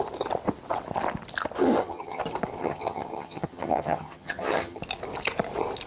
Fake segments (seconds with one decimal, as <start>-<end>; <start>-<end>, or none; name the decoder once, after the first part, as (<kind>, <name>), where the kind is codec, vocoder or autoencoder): 1.6-2.2 (vocoder, HiFi-GAN); 2.6-4.8